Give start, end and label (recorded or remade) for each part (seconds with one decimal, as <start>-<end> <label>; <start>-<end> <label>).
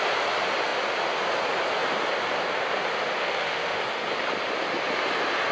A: 0.0-3.2 recorded; 3.2-3.8 remade; 3.8-5.5 recorded